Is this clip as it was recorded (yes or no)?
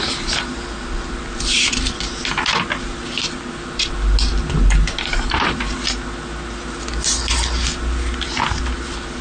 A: yes